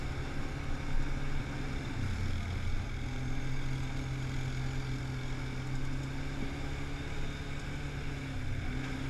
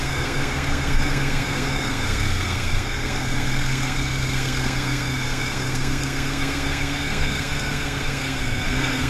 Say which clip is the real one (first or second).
first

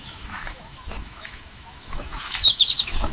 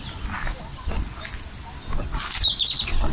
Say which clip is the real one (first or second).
second